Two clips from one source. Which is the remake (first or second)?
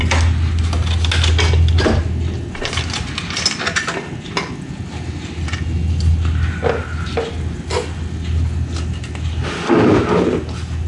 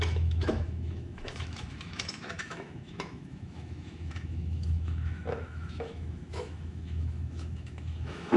second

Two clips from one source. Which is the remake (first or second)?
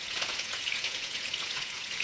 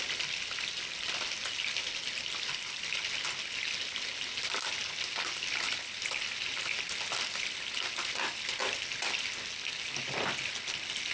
first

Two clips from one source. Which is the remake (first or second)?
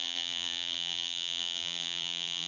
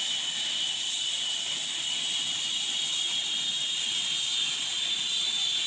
first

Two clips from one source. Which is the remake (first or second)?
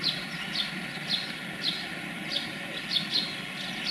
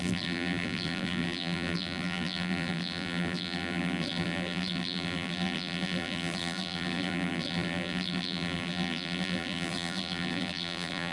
second